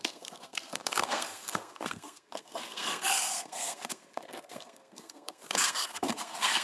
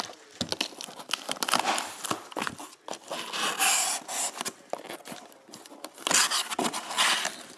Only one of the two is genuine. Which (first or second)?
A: second